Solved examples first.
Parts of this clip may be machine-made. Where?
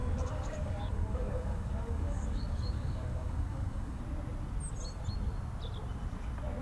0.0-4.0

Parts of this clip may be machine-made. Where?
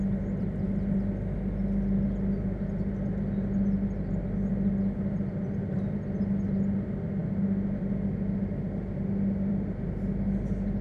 none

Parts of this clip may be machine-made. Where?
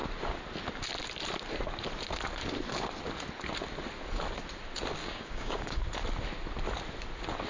5.0-5.8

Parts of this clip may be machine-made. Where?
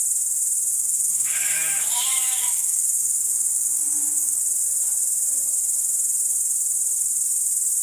0.7-4.4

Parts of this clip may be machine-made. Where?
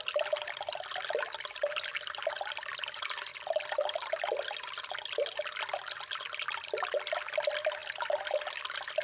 none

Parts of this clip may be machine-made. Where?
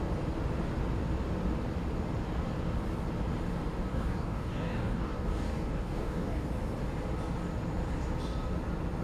3.9-6.5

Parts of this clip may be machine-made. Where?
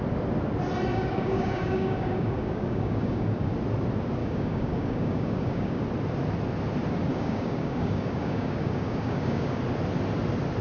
0.9-3.5; 4.2-5.8; 7.1-9.6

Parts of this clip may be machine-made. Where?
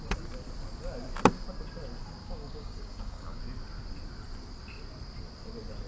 2.2-3.4